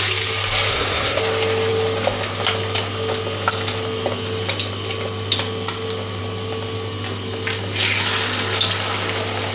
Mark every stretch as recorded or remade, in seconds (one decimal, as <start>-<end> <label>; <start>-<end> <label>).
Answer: 0.0-0.7 recorded; 0.7-1.2 remade; 1.2-9.5 recorded